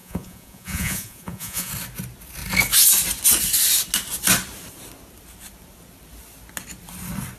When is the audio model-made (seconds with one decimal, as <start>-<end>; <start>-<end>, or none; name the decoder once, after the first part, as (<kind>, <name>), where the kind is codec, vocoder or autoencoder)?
0.0-1.7 (vocoder, Vocos)